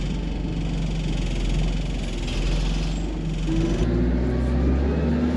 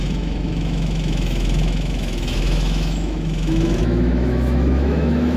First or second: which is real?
first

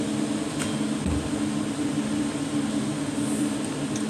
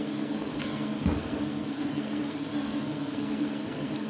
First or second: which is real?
first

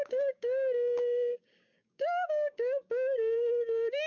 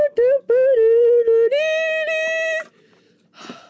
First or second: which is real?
second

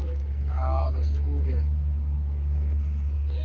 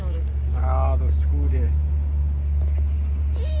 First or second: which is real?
second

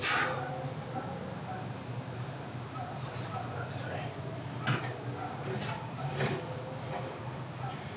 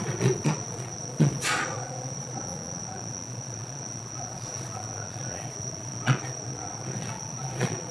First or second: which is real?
first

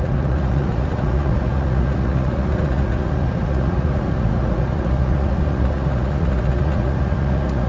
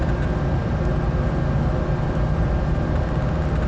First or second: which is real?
second